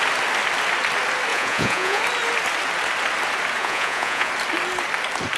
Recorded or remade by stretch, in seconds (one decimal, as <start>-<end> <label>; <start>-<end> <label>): 0.0-1.3 recorded; 1.3-2.0 remade; 2.0-3.6 recorded; 3.6-4.3 remade; 4.3-5.4 recorded